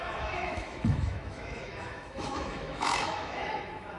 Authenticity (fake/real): fake